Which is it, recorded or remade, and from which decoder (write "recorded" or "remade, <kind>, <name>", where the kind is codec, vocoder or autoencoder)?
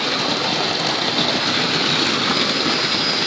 recorded